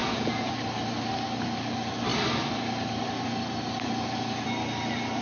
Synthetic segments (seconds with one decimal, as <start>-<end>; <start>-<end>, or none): 0.0-0.5

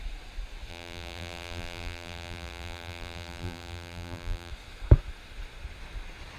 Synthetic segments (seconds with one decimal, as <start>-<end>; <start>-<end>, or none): 0.7-4.5

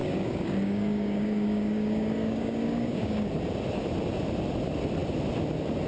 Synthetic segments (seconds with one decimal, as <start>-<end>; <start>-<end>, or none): 0.0-3.3

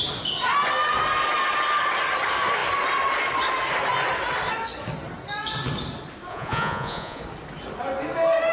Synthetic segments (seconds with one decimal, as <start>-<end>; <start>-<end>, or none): 6.3-7.2

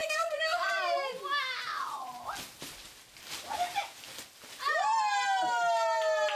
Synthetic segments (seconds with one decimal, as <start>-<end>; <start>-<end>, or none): 0.0-0.7

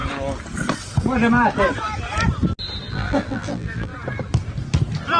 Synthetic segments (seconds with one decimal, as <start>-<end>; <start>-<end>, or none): 2.9-3.9

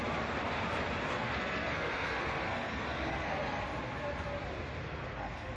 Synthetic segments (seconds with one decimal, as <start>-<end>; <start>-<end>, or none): 1.1-3.6; 4.8-5.6